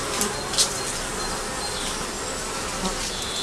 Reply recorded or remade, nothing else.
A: recorded